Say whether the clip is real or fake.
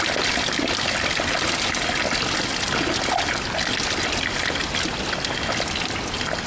real